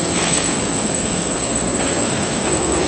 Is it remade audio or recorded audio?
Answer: remade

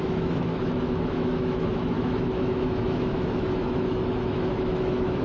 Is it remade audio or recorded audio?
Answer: remade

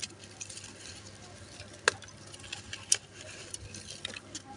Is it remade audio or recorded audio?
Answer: recorded